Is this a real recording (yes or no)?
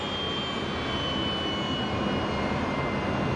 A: yes